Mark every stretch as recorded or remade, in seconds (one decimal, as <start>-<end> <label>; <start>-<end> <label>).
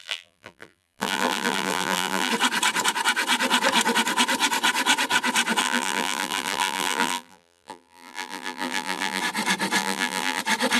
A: 0.0-2.3 remade; 2.3-5.6 recorded; 5.6-9.2 remade; 9.2-9.8 recorded; 9.8-10.4 remade; 10.4-10.8 recorded